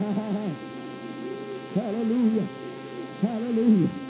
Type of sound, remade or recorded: remade